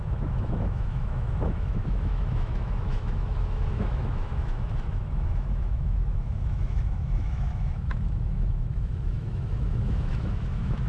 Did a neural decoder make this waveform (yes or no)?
yes